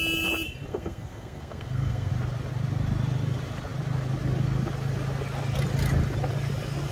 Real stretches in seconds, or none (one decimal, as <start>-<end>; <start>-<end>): 0.0-0.7; 2.1-6.9